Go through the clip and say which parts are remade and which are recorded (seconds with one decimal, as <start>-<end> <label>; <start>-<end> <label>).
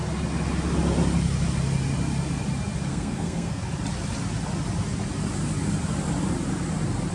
0.0-2.9 recorded; 2.9-3.6 remade; 3.6-7.1 recorded